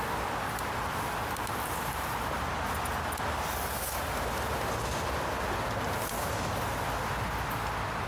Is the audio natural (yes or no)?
yes